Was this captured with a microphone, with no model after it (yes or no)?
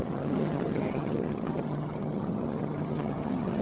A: no